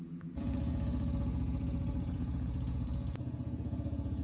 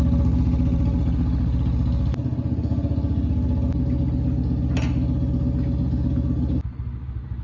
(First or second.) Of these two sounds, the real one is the second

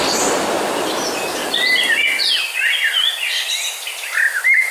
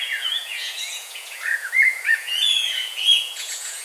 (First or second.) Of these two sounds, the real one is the first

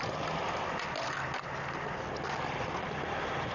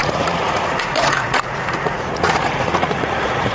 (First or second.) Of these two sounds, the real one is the first